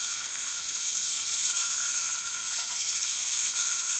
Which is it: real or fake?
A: fake